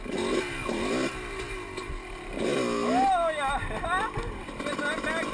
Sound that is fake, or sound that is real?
real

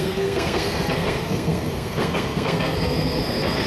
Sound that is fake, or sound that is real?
fake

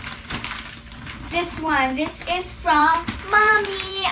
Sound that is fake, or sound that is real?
fake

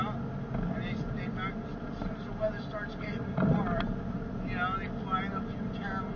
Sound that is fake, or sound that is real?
real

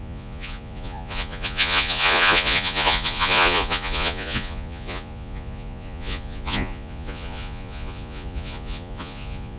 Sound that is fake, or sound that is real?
fake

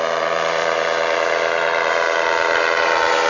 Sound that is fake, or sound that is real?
fake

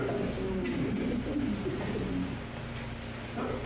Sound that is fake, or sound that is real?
real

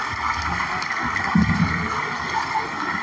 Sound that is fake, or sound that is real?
fake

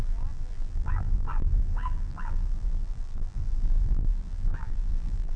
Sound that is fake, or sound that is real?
fake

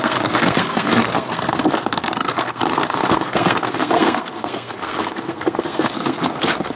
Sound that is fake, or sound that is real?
fake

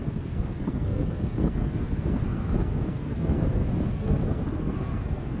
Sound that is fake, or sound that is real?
fake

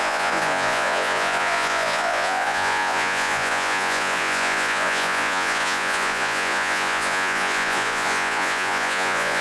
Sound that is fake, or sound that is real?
fake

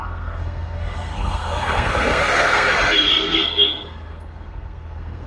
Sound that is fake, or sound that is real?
fake